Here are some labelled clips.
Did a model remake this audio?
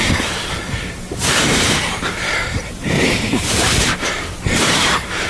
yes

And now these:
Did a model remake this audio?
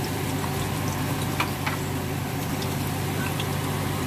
yes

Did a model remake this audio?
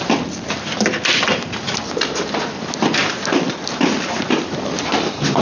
no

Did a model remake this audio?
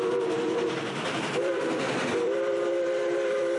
yes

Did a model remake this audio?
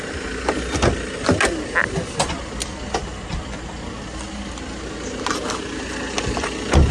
no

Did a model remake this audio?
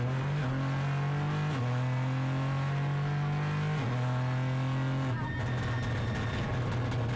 no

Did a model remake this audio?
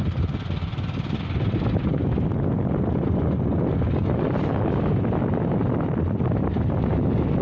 no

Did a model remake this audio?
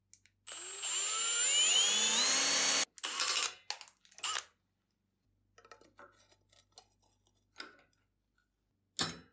no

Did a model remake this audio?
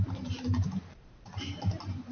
yes